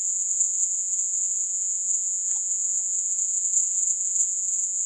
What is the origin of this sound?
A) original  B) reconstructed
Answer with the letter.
B